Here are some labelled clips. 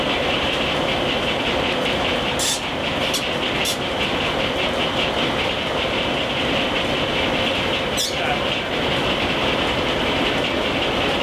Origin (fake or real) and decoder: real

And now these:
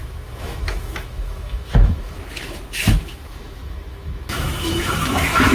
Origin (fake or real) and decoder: fake, autoencoder, DAC-VAE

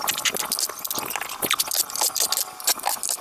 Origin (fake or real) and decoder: real